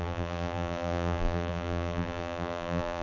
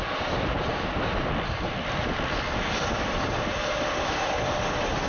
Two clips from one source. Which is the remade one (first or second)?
first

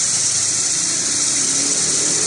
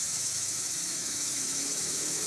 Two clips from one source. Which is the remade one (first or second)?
second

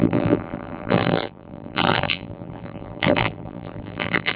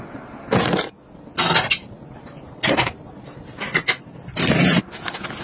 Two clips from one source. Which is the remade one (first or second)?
first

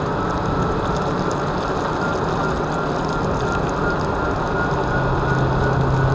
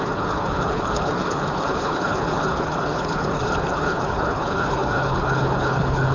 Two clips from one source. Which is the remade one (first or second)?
second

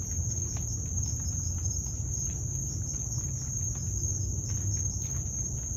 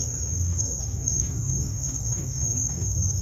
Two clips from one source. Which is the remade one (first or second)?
second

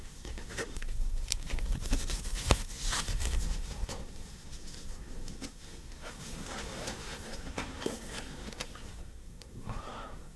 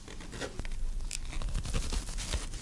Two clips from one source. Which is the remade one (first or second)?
first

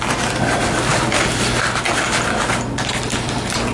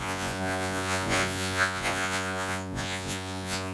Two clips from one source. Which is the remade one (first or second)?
second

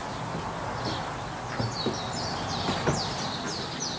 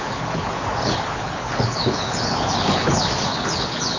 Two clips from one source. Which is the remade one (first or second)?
second